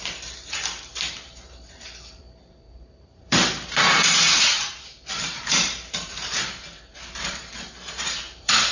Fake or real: fake